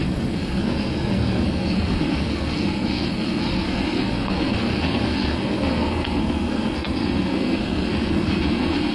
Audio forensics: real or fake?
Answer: fake